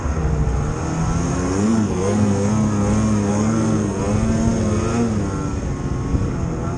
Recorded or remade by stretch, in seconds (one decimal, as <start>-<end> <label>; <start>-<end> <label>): 0.0-1.3 recorded; 1.3-2.5 remade; 2.5-3.3 recorded; 3.3-4.0 remade; 4.0-6.8 recorded